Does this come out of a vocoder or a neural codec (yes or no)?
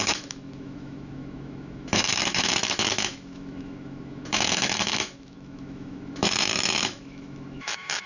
yes